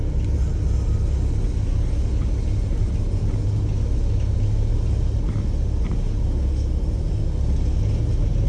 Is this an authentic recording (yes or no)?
yes